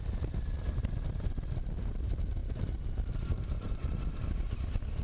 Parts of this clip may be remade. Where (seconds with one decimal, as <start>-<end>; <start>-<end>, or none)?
2.4-3.9